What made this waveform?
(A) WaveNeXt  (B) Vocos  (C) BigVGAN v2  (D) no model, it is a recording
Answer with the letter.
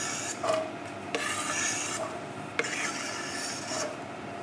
D